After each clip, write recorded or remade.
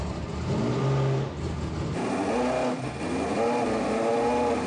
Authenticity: recorded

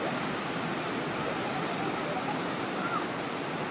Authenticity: recorded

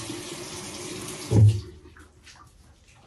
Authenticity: recorded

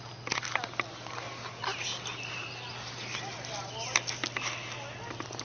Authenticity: recorded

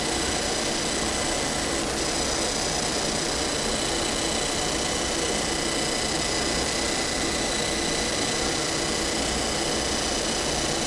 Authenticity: recorded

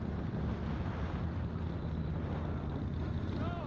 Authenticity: recorded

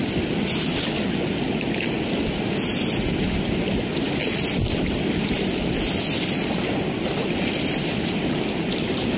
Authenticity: recorded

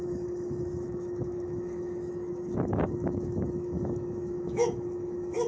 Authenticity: remade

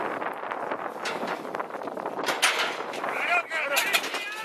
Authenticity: recorded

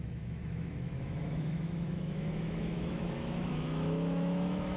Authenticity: remade